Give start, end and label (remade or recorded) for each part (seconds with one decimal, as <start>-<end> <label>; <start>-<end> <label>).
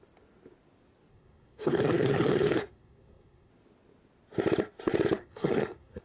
0.0-1.1 recorded; 1.1-3.5 remade; 3.5-5.2 recorded; 5.2-6.0 remade